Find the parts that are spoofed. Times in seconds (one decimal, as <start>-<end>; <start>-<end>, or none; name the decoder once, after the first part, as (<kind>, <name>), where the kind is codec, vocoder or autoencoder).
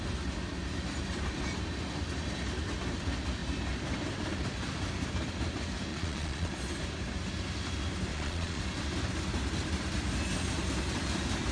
5.9-6.5 (vocoder, Vocos); 8.1-8.6